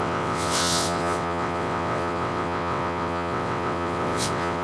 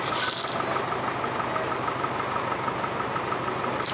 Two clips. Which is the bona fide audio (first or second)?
second